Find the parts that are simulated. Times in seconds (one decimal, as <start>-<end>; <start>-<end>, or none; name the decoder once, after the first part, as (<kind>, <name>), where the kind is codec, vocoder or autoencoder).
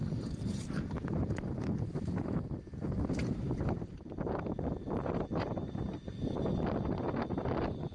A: 0.0-1.9 (vocoder, BigVGAN v2); 3.2-7.5